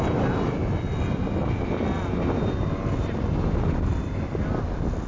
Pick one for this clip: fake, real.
real